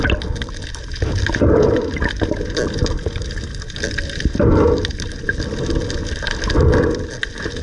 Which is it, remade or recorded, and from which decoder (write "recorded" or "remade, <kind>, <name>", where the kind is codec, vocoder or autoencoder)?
recorded